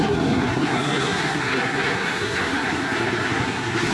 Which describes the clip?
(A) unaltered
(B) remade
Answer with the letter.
B